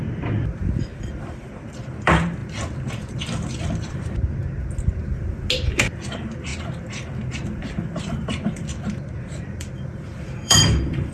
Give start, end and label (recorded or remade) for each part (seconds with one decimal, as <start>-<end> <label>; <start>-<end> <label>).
0.0-4.4 remade; 4.4-5.7 recorded; 5.7-6.5 remade; 6.5-8.0 recorded; 8.0-11.1 remade